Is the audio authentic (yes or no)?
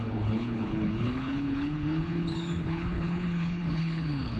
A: no